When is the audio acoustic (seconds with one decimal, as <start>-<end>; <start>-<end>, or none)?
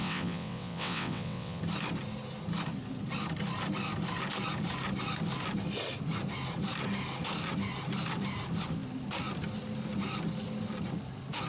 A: 1.6-11.5